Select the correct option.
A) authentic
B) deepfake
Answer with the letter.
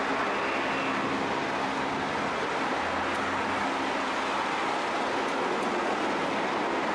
A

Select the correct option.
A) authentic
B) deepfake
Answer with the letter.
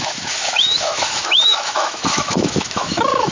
B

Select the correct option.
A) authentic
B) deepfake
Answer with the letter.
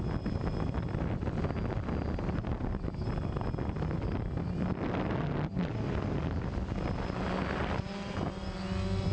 A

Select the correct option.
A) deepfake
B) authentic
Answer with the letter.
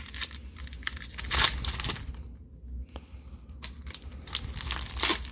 B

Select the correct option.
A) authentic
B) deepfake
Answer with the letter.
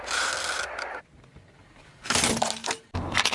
A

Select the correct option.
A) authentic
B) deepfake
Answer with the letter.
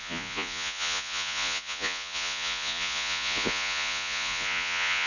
B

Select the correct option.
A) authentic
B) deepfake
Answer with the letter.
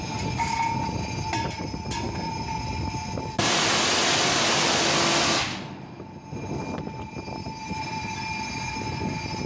A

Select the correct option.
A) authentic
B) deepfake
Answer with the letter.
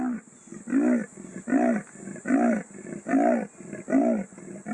A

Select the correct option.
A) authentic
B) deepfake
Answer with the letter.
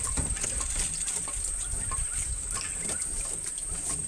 A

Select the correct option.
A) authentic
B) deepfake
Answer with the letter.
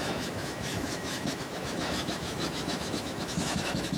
B